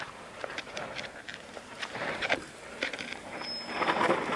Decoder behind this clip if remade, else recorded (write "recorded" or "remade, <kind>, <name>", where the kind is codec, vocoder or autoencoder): remade, vocoder, BigVGAN v2